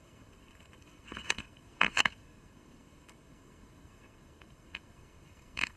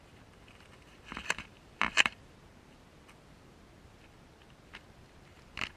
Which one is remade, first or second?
first